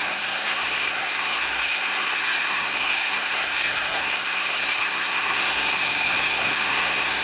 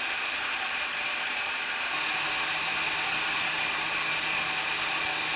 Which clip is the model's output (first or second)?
first